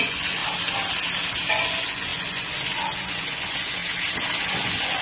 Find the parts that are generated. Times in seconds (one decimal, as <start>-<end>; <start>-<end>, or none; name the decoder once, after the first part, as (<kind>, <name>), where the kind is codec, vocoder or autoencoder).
0.0-0.4 (vocoder, Vocos); 1.5-3.8; 4.4-5.0